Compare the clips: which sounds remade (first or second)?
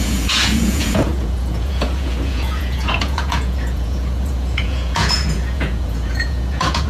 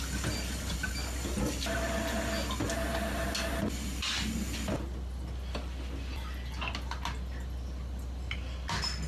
first